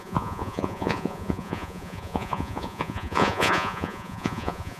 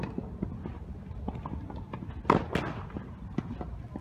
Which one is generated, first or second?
first